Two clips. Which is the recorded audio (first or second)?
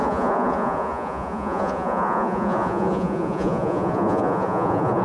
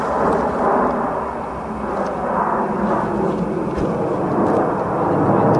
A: second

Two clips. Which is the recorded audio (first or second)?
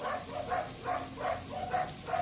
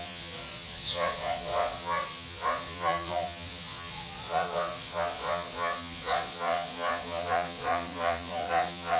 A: first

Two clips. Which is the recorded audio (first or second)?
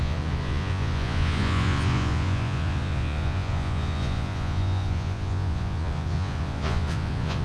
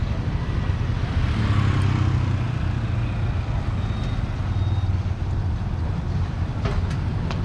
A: second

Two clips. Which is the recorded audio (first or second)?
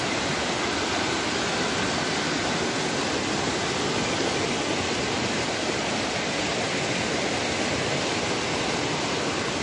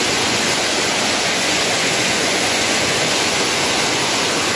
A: first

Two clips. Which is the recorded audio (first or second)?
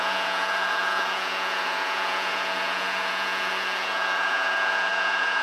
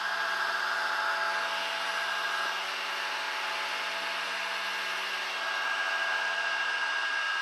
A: second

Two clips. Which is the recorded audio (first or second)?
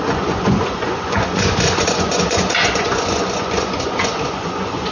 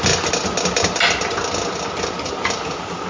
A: second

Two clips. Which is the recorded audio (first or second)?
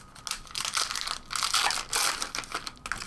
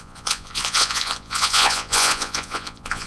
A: first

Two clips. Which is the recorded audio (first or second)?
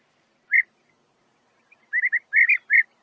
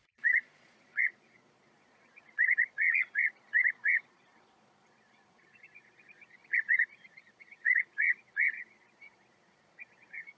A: first